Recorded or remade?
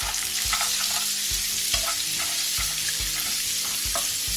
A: recorded